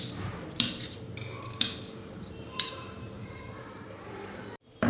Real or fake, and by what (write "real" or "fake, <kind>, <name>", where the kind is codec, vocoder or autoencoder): fake, vocoder, BigVGAN v2